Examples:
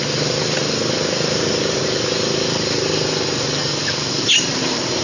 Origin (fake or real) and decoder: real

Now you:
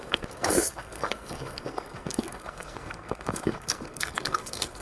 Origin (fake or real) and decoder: fake, codec, SNAC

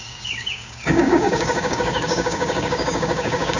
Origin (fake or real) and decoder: fake, codec, DAC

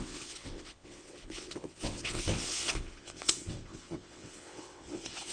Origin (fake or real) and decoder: fake, vocoder, WaveNeXt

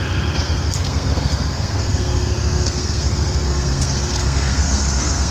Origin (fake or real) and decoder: fake, codec, SNAC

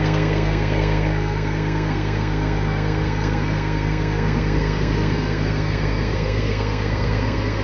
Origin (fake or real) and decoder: fake, codec, SNAC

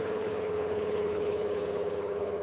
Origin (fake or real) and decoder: fake, codec, HILCodec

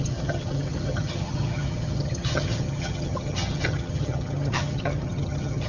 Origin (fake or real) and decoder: fake, vocoder, HiFi-GAN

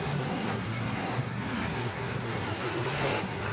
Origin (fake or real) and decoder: fake, codec, SNAC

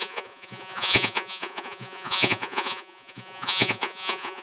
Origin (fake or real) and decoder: fake, vocoder, Vocos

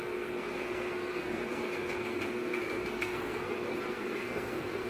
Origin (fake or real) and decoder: fake, codec, SNAC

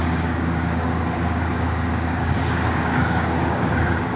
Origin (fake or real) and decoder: fake, codec, DAC